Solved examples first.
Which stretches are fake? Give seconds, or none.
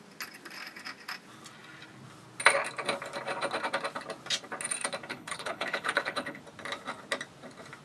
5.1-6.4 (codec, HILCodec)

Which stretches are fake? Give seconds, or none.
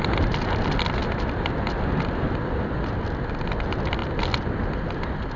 none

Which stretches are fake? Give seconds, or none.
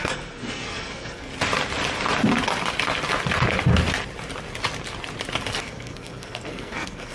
0.0-1.3 (codec, SNAC); 5.6-7.1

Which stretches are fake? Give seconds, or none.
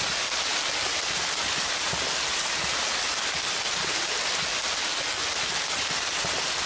0.5-4.5 (vocoder, BigVGAN v2)